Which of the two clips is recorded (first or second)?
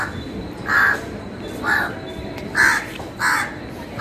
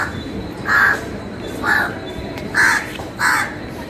first